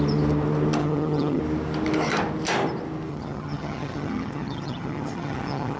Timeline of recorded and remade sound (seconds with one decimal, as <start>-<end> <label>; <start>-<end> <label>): 0.0-0.8 recorded; 0.8-1.4 remade; 1.4-3.1 recorded; 3.1-5.8 remade